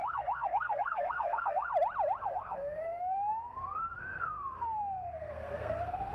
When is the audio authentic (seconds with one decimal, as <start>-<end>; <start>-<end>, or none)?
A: 1.7-2.2